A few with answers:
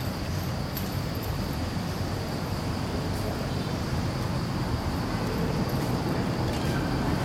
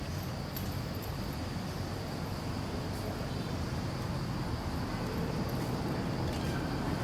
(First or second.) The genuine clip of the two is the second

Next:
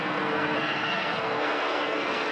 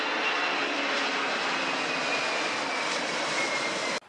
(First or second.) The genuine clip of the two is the second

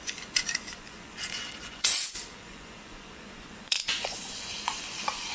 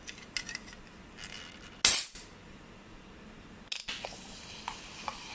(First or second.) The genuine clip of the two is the second